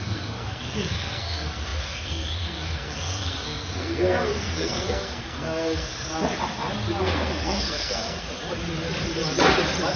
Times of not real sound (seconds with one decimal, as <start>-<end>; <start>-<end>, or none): 0.0-5.9; 7.0-8.3